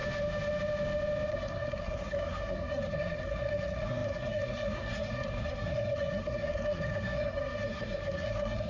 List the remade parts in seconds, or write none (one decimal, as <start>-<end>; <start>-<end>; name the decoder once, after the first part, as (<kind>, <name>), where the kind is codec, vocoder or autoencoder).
1.3-8.7 (codec, SNAC)